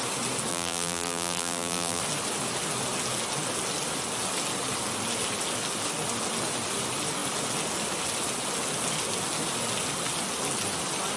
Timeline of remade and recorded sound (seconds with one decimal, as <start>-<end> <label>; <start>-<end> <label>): 0.0-0.5 recorded; 0.5-2.0 remade; 2.0-11.2 recorded